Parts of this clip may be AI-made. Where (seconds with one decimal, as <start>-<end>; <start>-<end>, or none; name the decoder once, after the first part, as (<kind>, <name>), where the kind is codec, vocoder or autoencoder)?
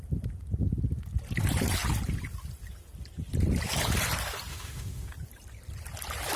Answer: 4.5-5.1 (autoencoder, DAC-VAE)